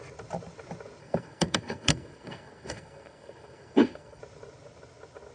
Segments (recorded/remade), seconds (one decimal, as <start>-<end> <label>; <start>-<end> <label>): 0.0-1.0 recorded; 1.0-4.2 remade; 4.2-5.3 recorded